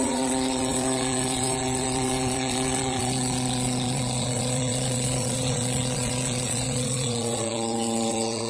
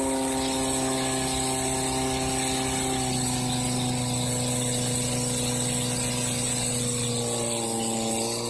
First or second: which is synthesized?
first